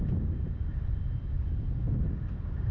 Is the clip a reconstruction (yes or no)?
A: no